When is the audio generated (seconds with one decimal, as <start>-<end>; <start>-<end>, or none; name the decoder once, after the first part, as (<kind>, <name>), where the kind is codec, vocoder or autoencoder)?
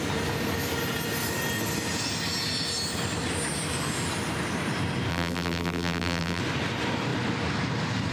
5.1-6.4 (vocoder, BigVGAN v2)